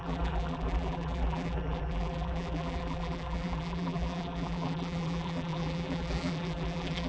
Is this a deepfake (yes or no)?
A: yes